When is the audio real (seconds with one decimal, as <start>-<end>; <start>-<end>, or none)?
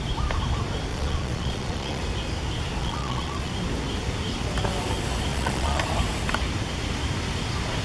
0.0-0.9; 2.0-2.8; 3.5-5.3; 5.8-7.8